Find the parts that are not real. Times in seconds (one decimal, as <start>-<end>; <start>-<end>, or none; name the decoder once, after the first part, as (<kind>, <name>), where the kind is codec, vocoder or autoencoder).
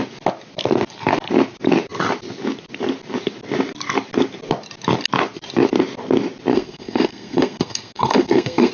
6.5-8.7 (codec, SNAC)